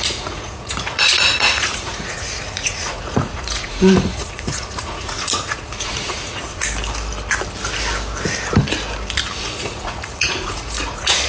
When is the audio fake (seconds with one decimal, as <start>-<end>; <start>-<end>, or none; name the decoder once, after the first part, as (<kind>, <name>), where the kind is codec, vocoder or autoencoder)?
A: 0.0-6.6 (vocoder, Vocos); 9.4-11.3